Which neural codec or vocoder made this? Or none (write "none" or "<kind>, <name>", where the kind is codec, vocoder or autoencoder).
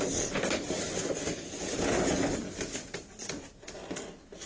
none